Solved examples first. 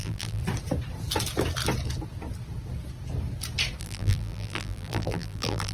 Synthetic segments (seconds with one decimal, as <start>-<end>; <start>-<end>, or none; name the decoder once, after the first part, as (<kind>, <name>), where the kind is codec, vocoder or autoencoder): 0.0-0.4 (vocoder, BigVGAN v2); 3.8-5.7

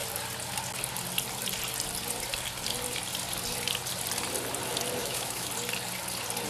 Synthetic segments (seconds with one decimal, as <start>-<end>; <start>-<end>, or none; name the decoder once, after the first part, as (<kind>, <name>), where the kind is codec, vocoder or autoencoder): 5.0-5.5 (autoencoder, DAC-VAE)

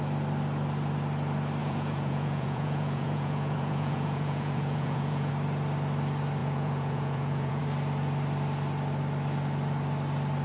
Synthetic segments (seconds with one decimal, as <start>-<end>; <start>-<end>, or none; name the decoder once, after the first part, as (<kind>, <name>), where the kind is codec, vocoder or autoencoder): 1.6-5.3 (vocoder, Vocos); 6.4-7.6

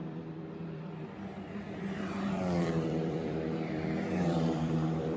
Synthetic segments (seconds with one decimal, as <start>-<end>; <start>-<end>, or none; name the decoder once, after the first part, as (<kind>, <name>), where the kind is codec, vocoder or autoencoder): 0.0-5.2 (vocoder, BigVGAN v2)

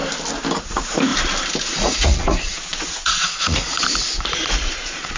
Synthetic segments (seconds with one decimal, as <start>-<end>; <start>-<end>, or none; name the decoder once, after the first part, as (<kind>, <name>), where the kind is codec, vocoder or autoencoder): 0.6-1.1 (vocoder, Vocos); 1.6-5.2